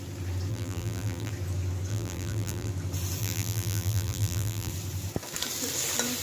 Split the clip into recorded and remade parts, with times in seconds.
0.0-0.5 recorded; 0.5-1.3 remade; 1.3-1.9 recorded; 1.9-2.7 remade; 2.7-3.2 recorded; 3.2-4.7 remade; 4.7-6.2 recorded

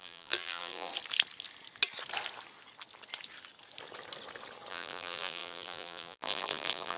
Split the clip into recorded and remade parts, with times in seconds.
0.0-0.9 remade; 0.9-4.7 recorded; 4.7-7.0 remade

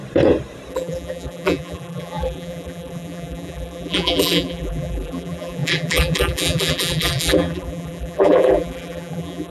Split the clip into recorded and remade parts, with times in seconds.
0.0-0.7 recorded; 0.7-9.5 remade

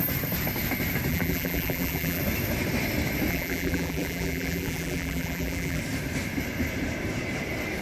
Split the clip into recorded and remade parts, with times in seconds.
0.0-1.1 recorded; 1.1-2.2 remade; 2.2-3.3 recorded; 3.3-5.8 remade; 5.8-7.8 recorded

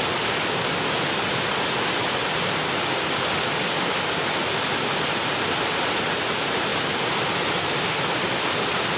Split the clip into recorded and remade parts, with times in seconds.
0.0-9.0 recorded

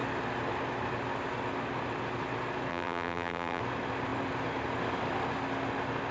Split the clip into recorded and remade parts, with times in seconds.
0.0-2.7 recorded; 2.7-3.6 remade; 3.6-6.1 recorded

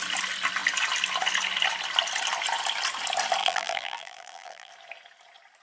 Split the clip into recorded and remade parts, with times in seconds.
0.0-3.4 recorded; 3.4-4.7 remade; 4.7-5.6 recorded

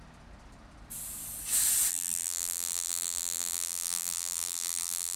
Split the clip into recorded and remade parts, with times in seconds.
0.0-1.9 recorded; 1.9-5.2 remade